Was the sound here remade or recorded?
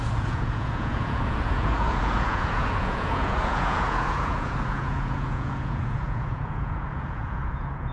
remade